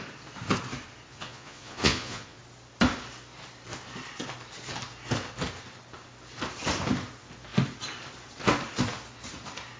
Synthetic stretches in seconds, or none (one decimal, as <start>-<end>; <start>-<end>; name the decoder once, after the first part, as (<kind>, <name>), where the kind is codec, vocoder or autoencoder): 1.1-2.4 (vocoder, Vocos)